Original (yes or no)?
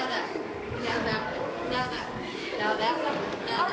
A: no